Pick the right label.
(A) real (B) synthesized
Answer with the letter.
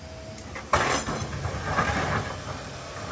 A